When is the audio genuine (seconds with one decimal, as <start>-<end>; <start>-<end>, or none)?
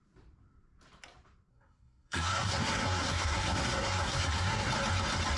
0.0-1.5; 4.7-5.4